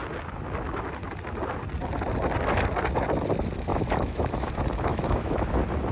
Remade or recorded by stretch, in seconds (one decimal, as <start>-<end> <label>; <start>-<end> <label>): 0.0-3.7 recorded; 3.7-4.5 remade; 4.5-4.9 recorded; 4.9-5.5 remade; 5.5-5.9 recorded